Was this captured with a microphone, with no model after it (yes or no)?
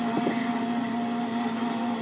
yes